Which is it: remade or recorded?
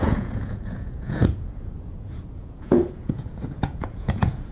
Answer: remade